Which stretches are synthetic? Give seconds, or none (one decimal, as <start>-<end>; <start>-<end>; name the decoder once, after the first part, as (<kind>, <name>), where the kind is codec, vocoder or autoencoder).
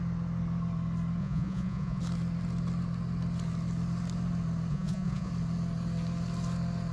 1.2-2.0 (vocoder, Vocos); 4.7-5.3